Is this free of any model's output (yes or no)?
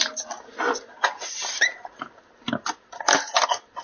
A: yes